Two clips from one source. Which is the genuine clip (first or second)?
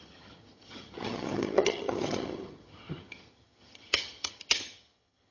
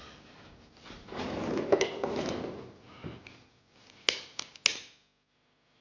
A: second